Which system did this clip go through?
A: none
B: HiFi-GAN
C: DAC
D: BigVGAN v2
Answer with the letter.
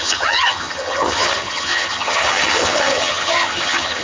B